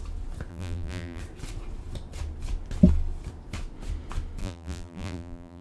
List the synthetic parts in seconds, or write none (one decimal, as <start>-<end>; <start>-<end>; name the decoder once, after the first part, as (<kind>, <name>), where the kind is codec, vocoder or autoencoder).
0.5-1.2 (vocoder, BigVGAN v2); 4.4-5.6